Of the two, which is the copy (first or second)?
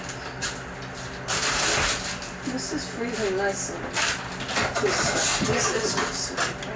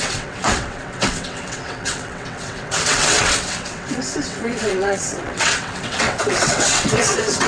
second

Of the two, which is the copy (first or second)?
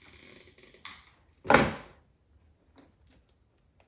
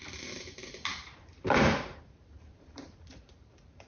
second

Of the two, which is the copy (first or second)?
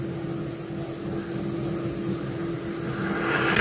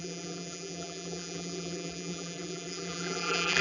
second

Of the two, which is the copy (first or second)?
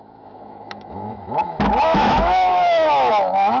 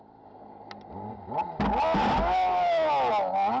first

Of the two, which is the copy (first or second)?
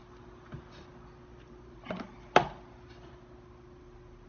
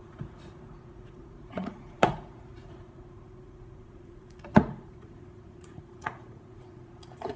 second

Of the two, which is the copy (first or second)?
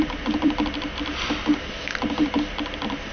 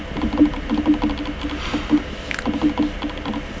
first